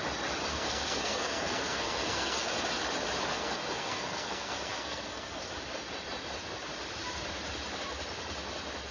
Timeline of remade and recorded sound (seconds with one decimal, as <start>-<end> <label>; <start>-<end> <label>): 0.0-0.5 recorded; 0.5-2.5 remade; 2.5-3.3 recorded; 3.3-5.5 remade; 5.5-8.9 recorded